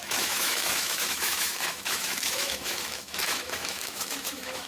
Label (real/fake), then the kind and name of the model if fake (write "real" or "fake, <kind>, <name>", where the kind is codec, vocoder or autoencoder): fake, autoencoder, DAC-VAE